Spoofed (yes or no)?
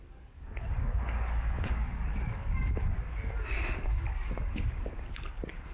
yes